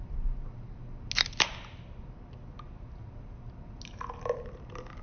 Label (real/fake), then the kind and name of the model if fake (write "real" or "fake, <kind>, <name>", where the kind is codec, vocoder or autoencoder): real